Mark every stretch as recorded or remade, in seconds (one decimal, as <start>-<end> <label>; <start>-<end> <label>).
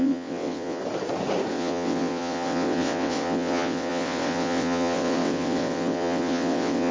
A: 0.0-0.8 remade; 0.8-1.5 recorded; 1.5-6.9 remade